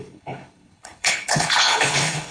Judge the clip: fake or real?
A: fake